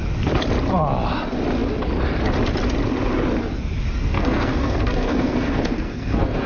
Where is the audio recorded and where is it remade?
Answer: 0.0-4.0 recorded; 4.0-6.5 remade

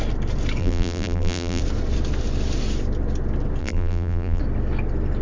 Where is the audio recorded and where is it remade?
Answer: 0.0-0.6 recorded; 0.6-1.6 remade; 1.6-3.6 recorded; 3.6-4.4 remade; 4.4-5.2 recorded

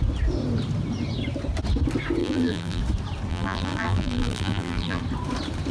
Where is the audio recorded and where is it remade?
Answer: 0.0-2.2 recorded; 2.2-2.8 remade; 2.8-3.3 recorded; 3.3-5.0 remade; 5.0-5.7 recorded

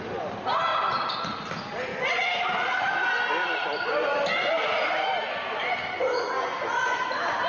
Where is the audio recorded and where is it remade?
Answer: 0.0-7.5 recorded